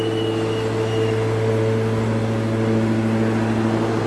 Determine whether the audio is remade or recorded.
recorded